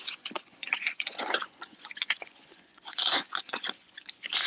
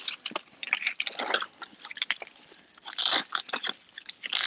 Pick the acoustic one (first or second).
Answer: second